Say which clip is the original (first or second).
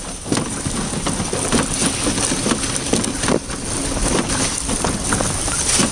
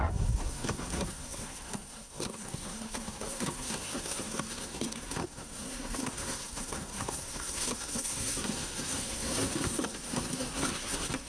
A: first